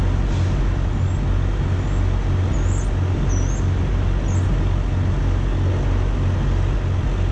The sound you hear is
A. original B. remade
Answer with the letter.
A